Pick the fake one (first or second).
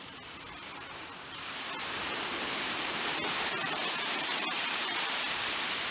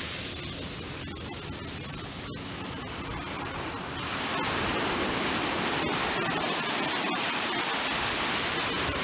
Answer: first